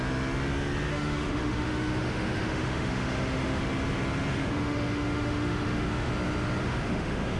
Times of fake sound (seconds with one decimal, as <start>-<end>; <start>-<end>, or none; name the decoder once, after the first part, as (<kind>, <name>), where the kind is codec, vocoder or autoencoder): 0.9-3.6 (autoencoder, DAC-VAE); 4.3-6.1; 6.6-7.4